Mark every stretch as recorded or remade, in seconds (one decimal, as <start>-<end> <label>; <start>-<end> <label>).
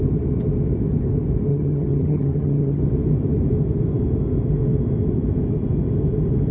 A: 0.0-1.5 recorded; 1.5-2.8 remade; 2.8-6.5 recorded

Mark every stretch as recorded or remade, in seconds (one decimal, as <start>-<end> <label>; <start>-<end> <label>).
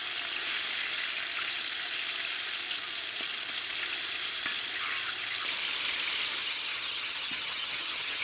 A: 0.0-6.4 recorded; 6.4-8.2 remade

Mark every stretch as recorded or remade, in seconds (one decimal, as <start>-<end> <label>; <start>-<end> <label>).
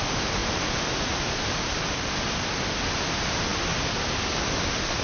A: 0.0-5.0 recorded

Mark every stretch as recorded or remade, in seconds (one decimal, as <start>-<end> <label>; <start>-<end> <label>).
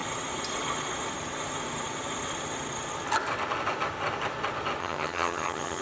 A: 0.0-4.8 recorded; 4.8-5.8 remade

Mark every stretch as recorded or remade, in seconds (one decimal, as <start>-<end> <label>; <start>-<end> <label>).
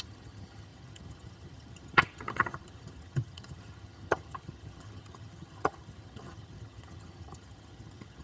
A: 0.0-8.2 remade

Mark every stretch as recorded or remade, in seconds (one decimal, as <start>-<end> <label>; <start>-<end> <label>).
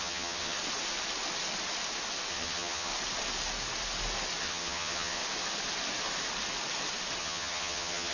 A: 0.0-0.6 remade; 0.6-2.3 recorded; 2.3-2.9 remade; 2.9-4.4 recorded; 4.4-5.2 remade; 5.2-7.2 recorded; 7.2-8.1 remade